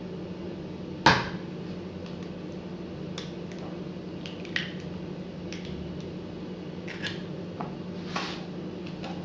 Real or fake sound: real